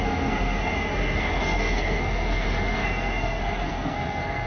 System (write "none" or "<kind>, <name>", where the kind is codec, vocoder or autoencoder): codec, SNAC